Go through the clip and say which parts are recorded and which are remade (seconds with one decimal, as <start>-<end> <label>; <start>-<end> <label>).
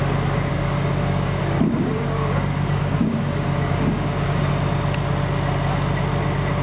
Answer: 0.0-0.5 recorded; 0.5-4.5 remade; 4.5-6.6 recorded